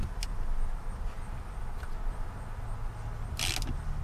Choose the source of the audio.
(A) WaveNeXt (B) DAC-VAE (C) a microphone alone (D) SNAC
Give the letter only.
C